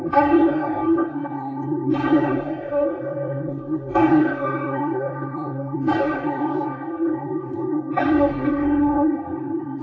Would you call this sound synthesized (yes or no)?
yes